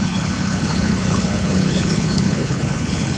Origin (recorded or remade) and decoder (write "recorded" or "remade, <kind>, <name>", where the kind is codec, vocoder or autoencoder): remade, codec, HILCodec